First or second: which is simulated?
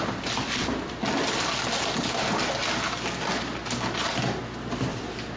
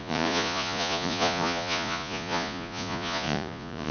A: second